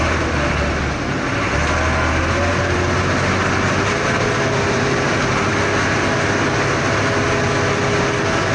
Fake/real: real